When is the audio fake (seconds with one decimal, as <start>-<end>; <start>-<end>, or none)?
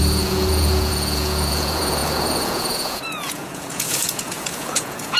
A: 0.0-5.2